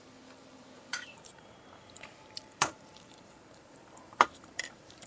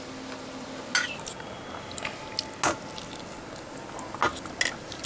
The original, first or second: second